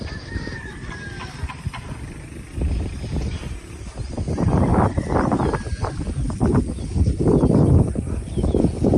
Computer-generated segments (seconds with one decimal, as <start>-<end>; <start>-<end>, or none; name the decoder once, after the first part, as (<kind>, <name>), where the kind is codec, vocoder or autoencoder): 1.2-2.5 (vocoder, BigVGAN v2); 4.7-6.3